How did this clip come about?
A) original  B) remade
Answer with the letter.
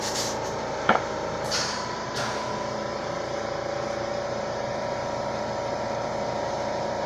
B